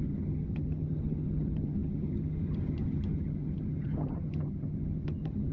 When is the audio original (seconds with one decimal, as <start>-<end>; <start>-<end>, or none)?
none